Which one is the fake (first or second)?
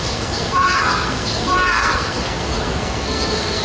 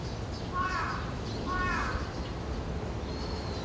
first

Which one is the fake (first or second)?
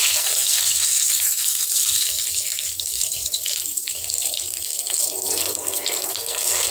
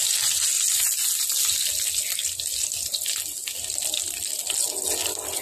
first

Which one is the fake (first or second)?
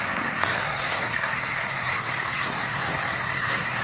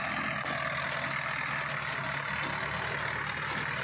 first